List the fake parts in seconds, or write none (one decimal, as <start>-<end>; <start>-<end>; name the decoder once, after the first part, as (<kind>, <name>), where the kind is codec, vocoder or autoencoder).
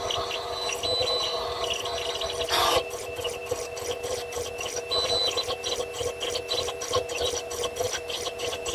none